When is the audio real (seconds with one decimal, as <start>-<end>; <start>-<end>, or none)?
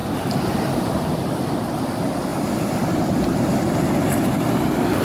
1.8-2.3; 3.5-5.0